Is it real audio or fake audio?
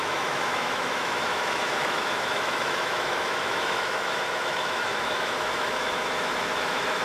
fake